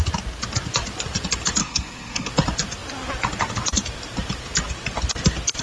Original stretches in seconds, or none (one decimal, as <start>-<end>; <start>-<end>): 0.0-1.6; 2.3-5.6